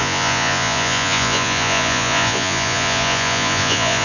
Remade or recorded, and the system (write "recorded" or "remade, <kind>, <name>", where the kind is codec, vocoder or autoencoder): remade, vocoder, Vocos